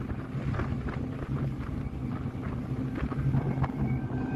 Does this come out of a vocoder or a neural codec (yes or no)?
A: no